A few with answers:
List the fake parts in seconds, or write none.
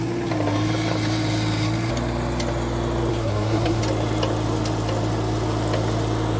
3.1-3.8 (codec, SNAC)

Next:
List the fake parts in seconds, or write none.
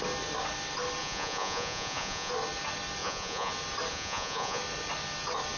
1.0-2.3 (vocoder, Vocos); 3.0-3.5; 3.9-4.6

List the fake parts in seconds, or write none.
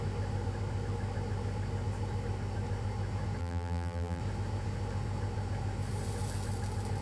3.4-4.2 (vocoder, BigVGAN v2)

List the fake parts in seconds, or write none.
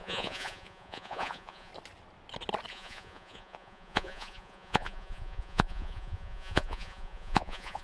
0.0-1.7 (vocoder, Vocos); 2.7-7.8